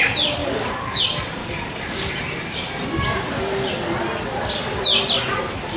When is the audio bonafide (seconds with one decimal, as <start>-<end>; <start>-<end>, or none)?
0.0-0.4; 1.0-1.4; 2.1-5.8

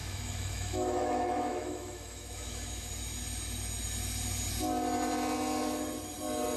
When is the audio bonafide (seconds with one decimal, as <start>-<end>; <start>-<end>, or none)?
2.9-6.6